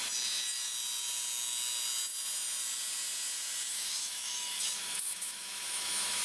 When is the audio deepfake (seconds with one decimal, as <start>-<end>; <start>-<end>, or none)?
3.7-6.2